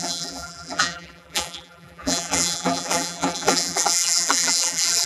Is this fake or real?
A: fake